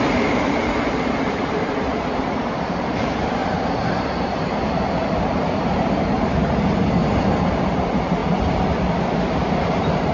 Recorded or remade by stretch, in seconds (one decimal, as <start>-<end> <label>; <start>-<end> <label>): 0.0-3.4 remade; 3.4-4.2 recorded; 4.2-6.4 remade; 6.4-7.4 recorded; 7.4-8.2 remade; 8.2-9.2 recorded; 9.2-10.1 remade